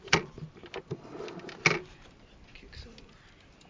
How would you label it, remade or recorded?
recorded